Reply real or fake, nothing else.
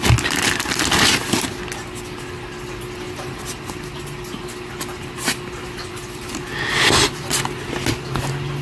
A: real